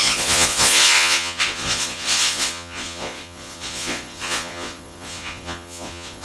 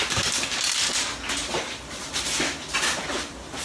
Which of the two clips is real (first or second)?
second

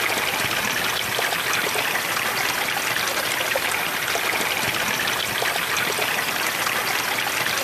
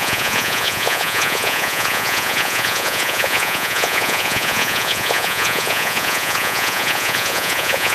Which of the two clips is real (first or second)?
first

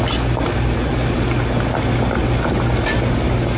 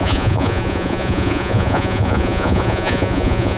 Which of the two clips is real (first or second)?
first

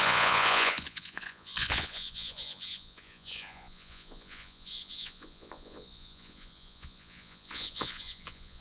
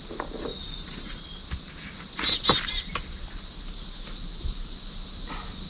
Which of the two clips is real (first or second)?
second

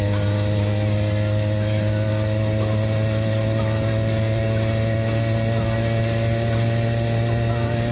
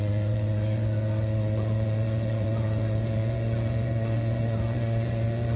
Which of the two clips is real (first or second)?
first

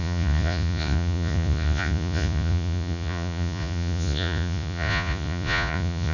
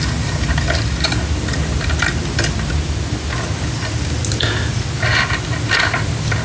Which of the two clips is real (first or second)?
second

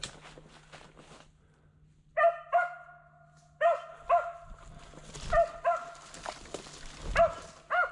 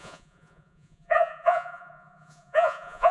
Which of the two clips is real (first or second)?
first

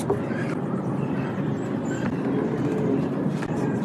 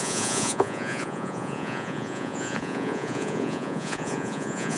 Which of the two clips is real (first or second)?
first